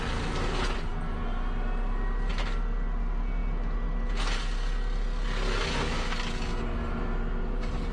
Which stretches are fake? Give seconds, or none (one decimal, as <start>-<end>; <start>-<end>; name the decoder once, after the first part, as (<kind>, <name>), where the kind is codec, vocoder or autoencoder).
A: none